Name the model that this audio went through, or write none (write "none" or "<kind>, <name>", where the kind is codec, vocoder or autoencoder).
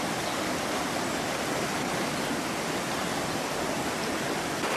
none